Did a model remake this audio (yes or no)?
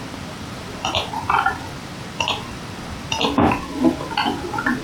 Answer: yes